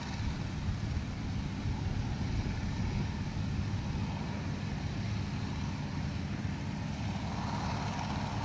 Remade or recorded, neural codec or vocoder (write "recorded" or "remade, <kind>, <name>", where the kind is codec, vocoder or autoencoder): recorded